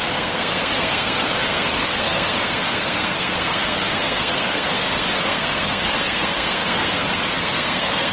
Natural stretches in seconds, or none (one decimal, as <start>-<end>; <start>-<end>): none